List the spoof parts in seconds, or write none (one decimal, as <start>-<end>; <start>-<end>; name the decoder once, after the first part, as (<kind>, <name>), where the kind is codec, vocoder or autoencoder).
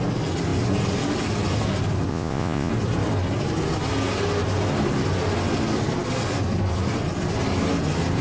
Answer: 2.1-2.7 (vocoder, Vocos)